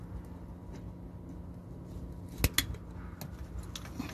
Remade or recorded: recorded